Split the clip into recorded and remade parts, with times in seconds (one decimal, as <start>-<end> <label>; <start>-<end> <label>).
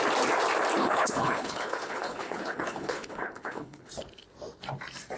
0.0-0.8 recorded; 0.8-3.9 remade; 3.9-5.2 recorded